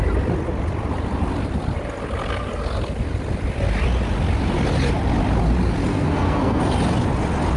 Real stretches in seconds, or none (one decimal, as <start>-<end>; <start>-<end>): 0.0-5.9; 6.6-7.6